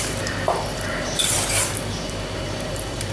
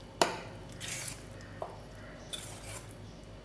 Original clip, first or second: second